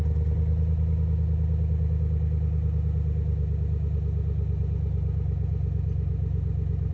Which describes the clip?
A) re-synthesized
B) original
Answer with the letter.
B